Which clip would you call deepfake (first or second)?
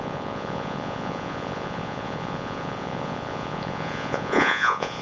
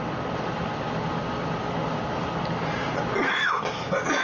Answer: first